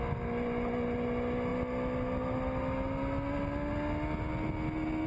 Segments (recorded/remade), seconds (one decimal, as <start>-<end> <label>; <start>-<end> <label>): 0.0-5.1 recorded